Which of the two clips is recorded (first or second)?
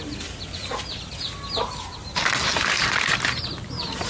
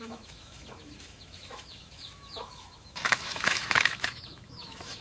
first